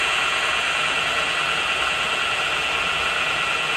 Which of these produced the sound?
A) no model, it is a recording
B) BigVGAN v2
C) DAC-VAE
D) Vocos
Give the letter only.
A